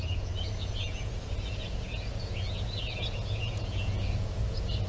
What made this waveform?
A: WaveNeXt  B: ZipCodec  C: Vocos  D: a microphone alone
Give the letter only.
C